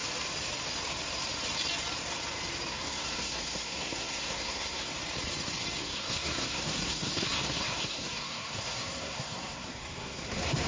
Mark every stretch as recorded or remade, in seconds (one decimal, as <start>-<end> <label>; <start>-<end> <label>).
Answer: 0.0-2.7 recorded; 2.7-4.9 remade; 4.9-5.8 recorded; 5.8-10.7 remade

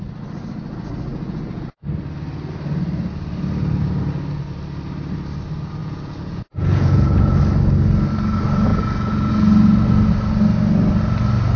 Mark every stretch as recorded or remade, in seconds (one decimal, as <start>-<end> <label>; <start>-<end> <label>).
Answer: 0.0-1.1 recorded; 1.1-1.7 remade; 1.7-5.8 recorded; 5.8-7.4 remade; 7.4-8.7 recorded; 8.7-9.3 remade; 9.3-11.6 recorded

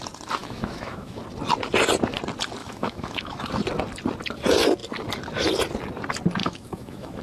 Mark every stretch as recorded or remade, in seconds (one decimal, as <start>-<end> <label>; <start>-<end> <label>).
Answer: 0.0-0.4 recorded; 0.4-1.2 remade; 1.2-2.6 recorded; 2.6-3.5 remade; 3.5-6.4 recorded; 6.4-7.2 remade

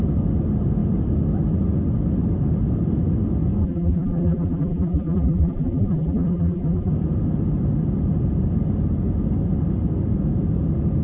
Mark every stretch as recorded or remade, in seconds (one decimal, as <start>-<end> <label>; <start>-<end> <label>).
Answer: 0.0-3.6 recorded; 3.6-6.9 remade; 6.9-11.0 recorded